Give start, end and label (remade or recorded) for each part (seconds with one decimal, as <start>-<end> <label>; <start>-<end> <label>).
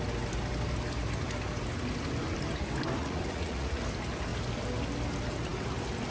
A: 0.0-3.0 recorded; 3.0-3.8 remade; 3.8-6.1 recorded